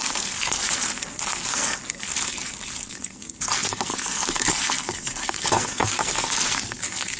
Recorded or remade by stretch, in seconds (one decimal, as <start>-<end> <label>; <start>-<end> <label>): 0.0-7.2 remade